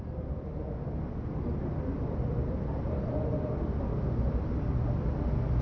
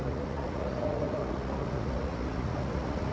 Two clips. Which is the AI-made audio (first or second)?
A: second